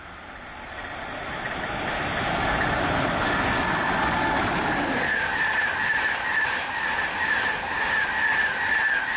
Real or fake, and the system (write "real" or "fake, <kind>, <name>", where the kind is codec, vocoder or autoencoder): real